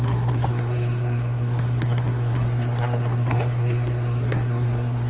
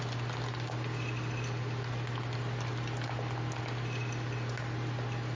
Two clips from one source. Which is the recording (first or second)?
second